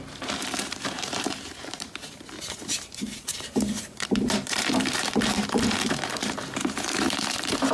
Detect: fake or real fake